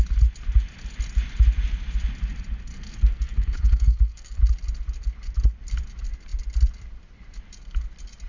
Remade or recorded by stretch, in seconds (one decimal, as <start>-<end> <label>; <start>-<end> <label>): 0.0-2.7 recorded; 2.7-4.4 remade; 4.4-8.3 recorded